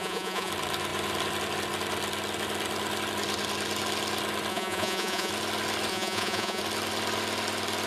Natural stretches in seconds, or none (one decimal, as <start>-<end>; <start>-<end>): 0.5-4.5; 5.3-5.9; 6.6-7.9